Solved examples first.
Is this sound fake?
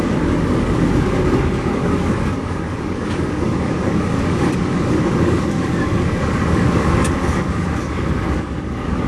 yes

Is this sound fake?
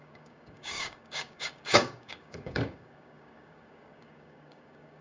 yes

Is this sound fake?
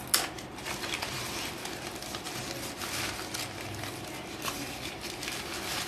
no